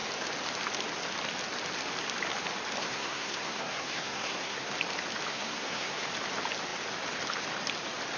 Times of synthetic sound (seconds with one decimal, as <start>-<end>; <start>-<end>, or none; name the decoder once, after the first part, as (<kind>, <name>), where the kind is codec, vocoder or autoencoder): 2.8-4.7 (codec, SNAC); 5.3-6.0